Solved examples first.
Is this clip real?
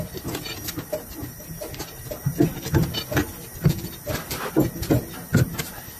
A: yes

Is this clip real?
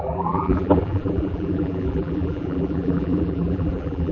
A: no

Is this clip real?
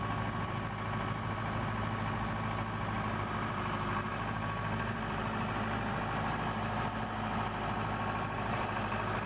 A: no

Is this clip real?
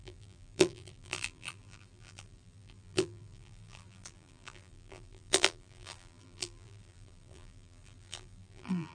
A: no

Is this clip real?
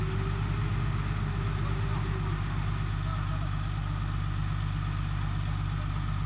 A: yes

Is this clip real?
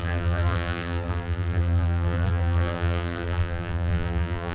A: no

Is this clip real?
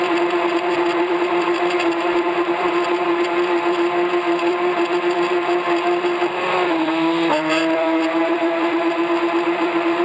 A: no